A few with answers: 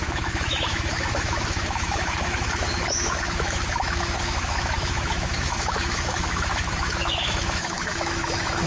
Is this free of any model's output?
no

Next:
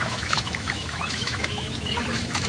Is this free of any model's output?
no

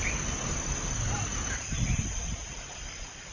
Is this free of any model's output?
yes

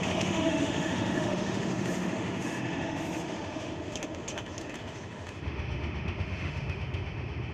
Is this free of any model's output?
no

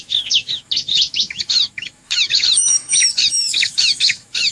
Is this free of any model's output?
no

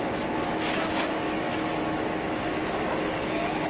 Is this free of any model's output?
no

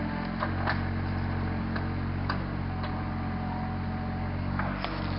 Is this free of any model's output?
yes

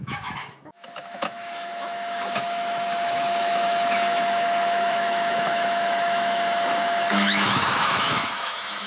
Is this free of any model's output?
no